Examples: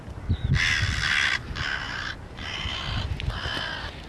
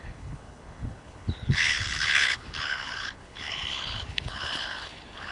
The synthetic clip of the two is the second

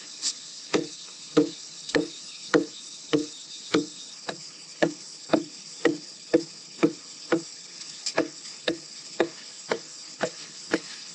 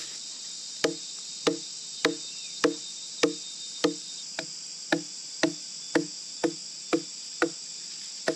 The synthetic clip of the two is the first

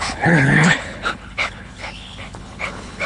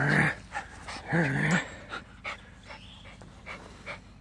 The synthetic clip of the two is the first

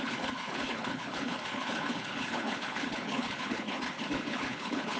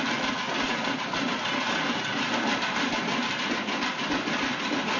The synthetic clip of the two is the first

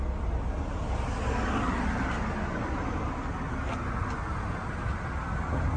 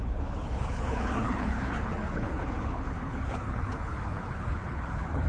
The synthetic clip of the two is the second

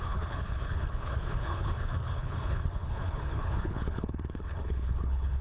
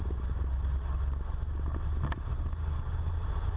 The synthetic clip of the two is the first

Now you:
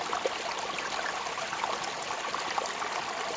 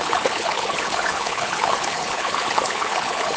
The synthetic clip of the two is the second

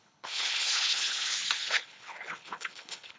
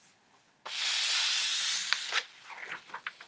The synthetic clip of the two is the first